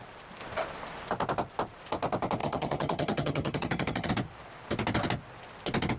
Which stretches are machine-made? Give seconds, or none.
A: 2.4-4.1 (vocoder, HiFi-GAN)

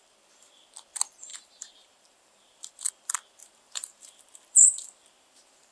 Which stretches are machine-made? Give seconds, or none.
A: 1.3-2.9 (vocoder, BigVGAN v2); 3.4-5.7

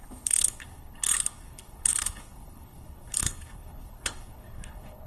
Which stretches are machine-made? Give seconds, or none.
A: 0.0-5.1 (codec, HILCodec)

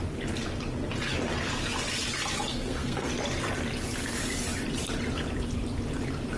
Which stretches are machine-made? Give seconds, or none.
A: 2.5-3.1 (codec, SNAC)

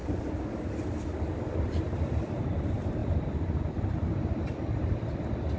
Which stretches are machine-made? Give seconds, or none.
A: none

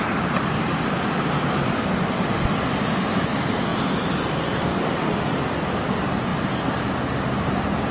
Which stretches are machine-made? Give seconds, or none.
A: none

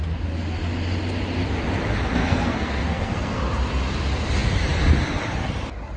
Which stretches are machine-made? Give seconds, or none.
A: 2.2-3.4 (codec, SNAC)